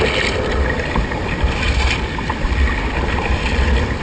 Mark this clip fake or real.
real